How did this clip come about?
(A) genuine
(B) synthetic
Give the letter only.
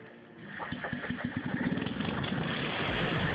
A